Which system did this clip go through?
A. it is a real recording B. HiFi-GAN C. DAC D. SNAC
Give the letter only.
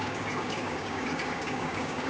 C